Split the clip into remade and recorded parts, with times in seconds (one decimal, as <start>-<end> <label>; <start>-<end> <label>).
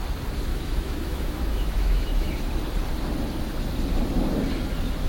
0.0-0.5 recorded; 0.5-2.3 remade; 2.3-5.1 recorded